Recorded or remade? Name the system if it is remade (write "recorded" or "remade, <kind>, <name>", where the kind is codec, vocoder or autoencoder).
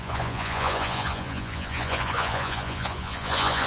remade, vocoder, Vocos